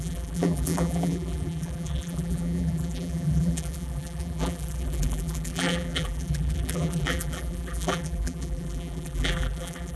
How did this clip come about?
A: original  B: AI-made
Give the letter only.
B